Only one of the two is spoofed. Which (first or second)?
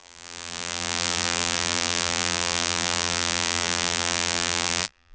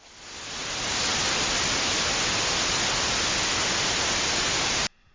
first